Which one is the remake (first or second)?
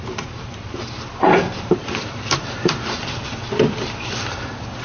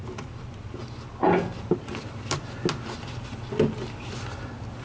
first